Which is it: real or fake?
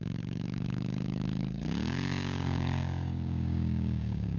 fake